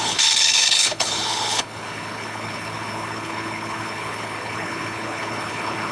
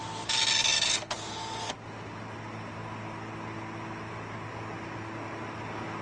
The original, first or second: second